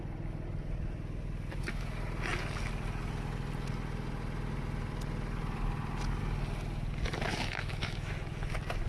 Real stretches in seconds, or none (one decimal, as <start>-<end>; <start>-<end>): 0.0-7.3; 8.1-8.9